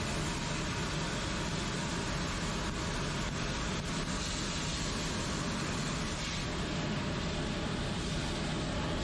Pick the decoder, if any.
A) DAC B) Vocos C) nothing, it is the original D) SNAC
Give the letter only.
C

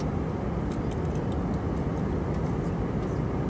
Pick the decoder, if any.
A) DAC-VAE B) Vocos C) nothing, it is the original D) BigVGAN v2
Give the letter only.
C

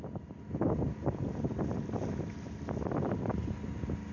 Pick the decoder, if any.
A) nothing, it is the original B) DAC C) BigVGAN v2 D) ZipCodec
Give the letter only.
A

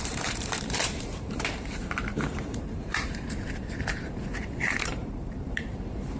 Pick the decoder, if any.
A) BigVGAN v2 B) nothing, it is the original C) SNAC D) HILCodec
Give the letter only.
A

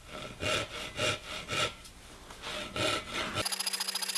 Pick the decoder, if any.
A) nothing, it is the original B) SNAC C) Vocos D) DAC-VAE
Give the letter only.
A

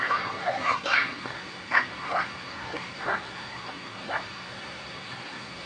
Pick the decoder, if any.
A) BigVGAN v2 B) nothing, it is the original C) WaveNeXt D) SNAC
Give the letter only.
D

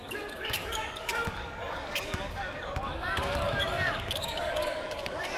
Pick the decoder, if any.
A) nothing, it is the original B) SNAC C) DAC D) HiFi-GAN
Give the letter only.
C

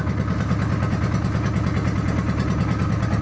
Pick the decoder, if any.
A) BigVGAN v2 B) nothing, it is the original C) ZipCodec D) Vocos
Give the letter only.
B